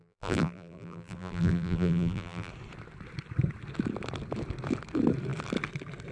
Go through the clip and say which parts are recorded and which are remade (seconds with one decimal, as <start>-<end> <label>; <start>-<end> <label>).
0.0-2.5 remade; 2.5-6.1 recorded